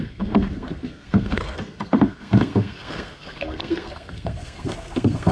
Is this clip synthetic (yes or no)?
yes